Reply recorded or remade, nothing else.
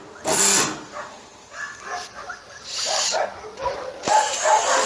recorded